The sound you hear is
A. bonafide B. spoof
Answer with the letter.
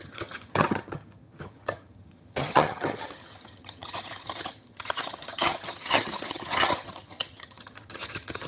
B